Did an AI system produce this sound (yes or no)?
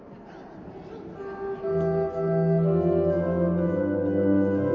no